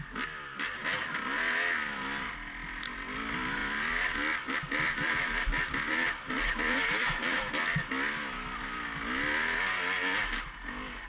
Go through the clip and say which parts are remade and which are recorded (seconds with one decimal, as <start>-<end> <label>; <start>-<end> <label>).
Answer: 0.0-3.6 recorded; 3.6-7.5 remade; 7.5-11.1 recorded